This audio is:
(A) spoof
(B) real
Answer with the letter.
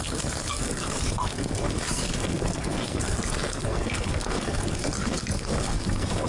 A